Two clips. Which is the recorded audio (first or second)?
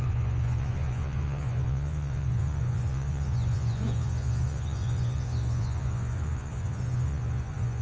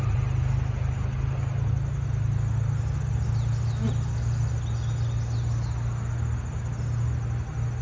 second